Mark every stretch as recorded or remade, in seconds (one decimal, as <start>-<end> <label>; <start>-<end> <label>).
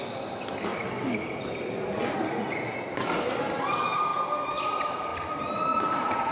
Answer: 0.0-0.7 remade; 0.7-3.6 recorded; 3.6-4.1 remade; 4.1-4.6 recorded; 4.6-6.3 remade